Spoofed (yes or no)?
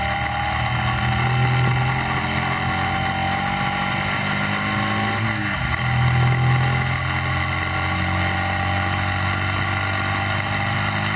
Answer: no